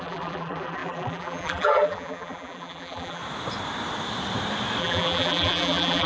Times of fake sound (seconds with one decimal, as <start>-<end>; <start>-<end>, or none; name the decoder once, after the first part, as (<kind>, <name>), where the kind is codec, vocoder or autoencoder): 0.0-3.2 (vocoder, BigVGAN v2); 4.8-6.1